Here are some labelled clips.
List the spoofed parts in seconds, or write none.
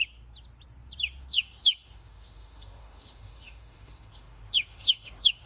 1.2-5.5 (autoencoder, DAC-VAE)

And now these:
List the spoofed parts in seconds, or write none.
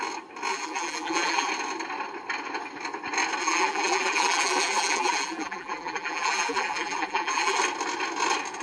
0.5-1.5 (vocoder, BigVGAN v2); 3.4-7.6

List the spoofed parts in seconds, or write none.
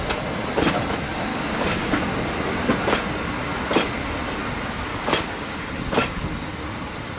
1.3-2.0 (codec, DAC); 4.9-5.7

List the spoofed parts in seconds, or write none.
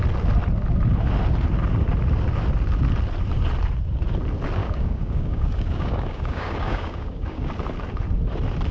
4.6-7.5 (codec, DAC)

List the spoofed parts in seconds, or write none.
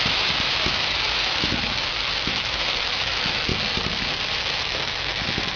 0.0-3.5 (autoencoder, DAC-VAE); 4.4-5.6